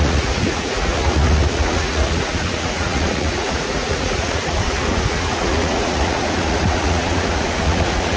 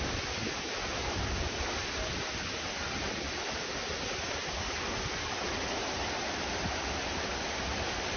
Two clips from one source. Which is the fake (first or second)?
first